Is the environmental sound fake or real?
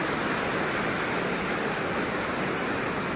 real